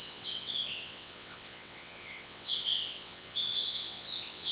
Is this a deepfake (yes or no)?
yes